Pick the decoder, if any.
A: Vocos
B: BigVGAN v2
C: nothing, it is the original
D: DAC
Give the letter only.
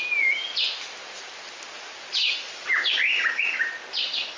C